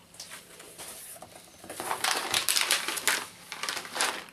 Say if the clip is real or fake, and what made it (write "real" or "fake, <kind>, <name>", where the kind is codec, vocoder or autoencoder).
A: fake, vocoder, BigVGAN v2